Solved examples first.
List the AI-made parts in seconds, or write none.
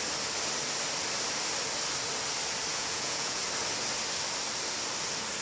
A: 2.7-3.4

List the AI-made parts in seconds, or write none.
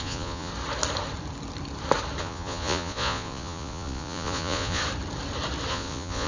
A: 0.0-0.5; 2.2-4.8; 5.7-6.3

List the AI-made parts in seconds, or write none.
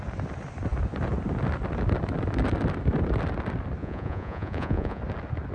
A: 3.8-5.0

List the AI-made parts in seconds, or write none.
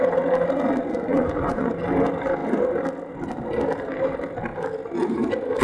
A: 0.9-1.7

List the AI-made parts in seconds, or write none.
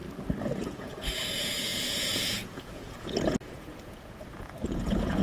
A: 0.6-5.2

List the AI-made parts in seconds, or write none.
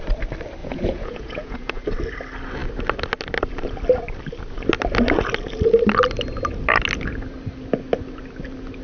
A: 0.6-1.8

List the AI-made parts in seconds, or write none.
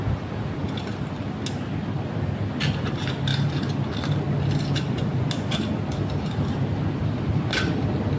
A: 0.0-0.8